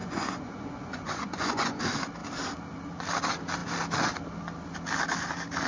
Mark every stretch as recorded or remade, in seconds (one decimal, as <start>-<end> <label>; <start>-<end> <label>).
0.0-1.8 remade; 1.8-5.7 recorded